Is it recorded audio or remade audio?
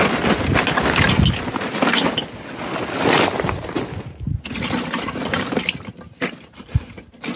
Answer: recorded